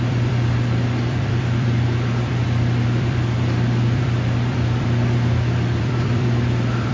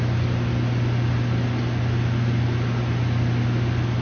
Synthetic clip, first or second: first